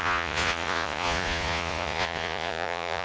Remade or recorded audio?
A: remade